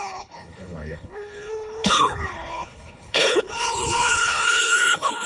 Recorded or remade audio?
remade